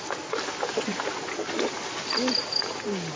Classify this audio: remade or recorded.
recorded